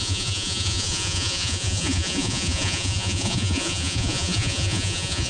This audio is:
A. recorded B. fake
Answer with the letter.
B